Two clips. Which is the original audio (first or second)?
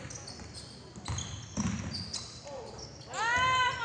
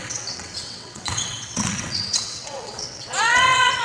first